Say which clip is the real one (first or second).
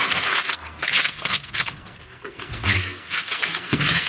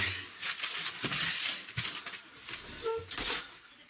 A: second